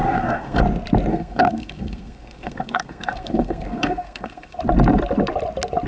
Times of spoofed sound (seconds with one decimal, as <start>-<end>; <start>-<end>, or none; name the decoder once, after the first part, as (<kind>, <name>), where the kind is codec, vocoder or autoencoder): 0.0-0.6 (codec, SNAC); 1.1-4.6

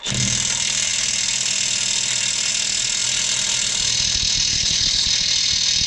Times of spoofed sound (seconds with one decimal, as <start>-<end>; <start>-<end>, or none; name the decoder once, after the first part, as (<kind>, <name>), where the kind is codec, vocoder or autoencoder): 4.5-5.1 (codec, HILCodec)

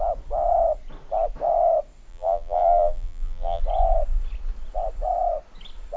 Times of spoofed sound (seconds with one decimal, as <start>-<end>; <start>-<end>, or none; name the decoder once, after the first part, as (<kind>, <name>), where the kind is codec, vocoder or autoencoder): 2.1-3.6 (vocoder, BigVGAN v2)

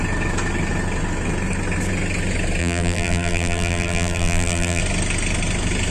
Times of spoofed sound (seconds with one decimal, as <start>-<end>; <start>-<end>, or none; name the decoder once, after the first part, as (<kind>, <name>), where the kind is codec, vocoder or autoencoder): 2.6-4.8 (vocoder, BigVGAN v2)

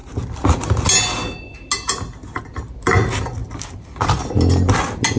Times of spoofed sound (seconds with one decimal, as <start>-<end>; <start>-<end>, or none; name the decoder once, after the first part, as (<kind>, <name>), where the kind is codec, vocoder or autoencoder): none

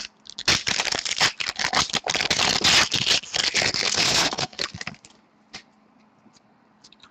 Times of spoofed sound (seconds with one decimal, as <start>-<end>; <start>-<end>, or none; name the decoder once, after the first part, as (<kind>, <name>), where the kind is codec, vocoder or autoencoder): 3.8-4.6 (codec, SNAC)

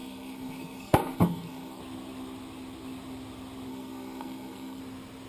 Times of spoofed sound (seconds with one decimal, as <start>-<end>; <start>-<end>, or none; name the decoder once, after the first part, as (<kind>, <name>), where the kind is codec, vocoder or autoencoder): 0.0-1.8 (codec, SNAC); 3.7-4.8